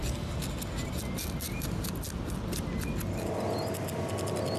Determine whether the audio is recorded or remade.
recorded